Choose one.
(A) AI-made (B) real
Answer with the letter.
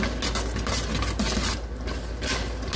B